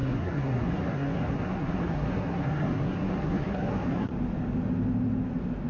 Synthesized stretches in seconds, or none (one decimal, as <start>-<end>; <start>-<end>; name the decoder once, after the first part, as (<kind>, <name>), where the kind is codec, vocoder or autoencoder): 0.0-4.1 (codec, SNAC)